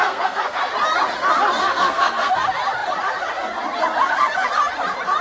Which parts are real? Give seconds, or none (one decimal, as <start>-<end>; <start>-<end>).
0.6-1.6; 2.3-5.2